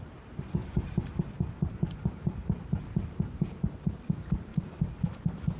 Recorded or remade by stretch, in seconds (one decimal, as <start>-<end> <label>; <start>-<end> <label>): 0.0-2.7 remade; 2.7-3.3 recorded; 3.3-4.5 remade; 4.5-5.6 recorded